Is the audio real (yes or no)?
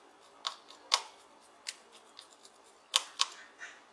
yes